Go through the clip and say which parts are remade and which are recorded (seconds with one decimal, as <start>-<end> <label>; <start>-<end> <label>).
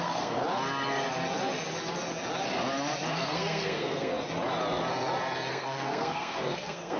0.0-0.4 remade; 0.4-3.1 recorded; 3.1-4.1 remade; 4.1-5.5 recorded; 5.5-7.0 remade